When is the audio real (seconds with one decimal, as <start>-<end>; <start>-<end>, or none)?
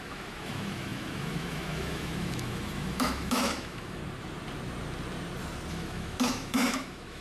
4.0-5.7